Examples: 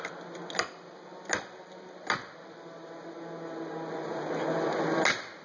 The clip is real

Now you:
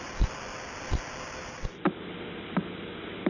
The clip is real